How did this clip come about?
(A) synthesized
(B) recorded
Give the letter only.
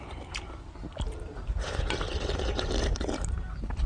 B